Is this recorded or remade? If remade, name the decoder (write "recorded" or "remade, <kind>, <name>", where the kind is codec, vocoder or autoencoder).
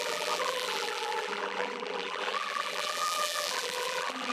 remade, vocoder, BigVGAN v2